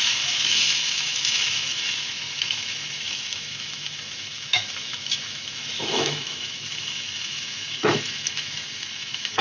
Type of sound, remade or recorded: remade